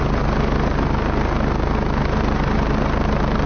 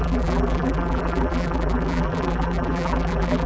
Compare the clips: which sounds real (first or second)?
first